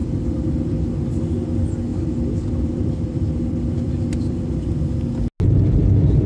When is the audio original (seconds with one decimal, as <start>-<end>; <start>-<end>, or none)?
1.1-1.9; 4.9-6.3

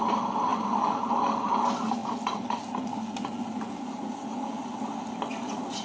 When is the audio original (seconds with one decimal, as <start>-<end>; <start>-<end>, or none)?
0.0-5.8

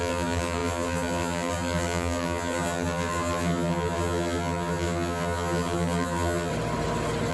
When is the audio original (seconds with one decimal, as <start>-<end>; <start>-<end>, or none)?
6.5-7.3

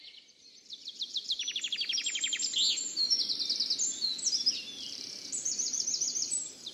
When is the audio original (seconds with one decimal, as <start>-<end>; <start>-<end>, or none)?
0.8-4.8

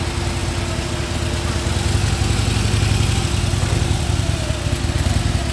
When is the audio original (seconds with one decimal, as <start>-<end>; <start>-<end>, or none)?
0.0-5.5